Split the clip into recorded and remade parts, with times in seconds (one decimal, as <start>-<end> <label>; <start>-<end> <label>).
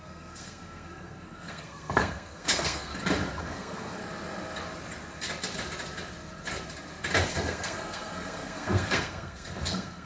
0.0-2.9 remade; 2.9-3.4 recorded; 3.4-4.0 remade; 4.0-7.3 recorded; 7.3-10.1 remade